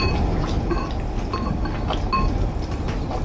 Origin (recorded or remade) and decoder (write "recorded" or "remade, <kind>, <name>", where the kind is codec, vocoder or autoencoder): recorded